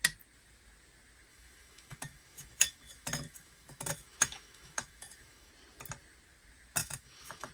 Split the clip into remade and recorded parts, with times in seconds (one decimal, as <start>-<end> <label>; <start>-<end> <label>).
0.0-1.3 recorded; 1.3-5.5 remade; 5.5-6.8 recorded; 6.8-7.5 remade